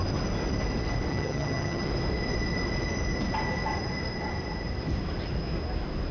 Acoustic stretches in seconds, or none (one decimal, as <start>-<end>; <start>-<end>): 0.0-1.1; 1.9-6.1